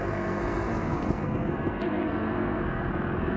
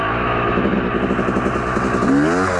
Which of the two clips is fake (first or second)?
first